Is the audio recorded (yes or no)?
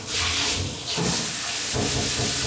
yes